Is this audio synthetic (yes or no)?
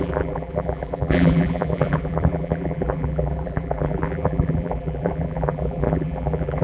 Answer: yes